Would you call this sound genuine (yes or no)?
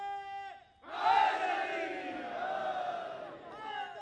yes